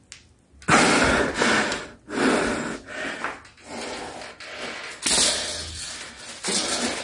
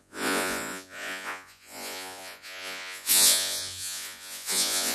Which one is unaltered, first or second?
first